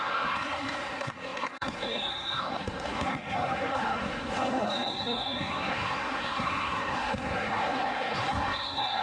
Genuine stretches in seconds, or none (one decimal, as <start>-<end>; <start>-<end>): none